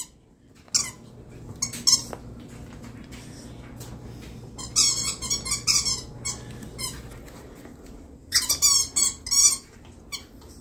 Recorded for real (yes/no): yes